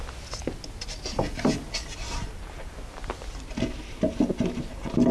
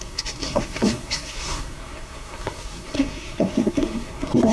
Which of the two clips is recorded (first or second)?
first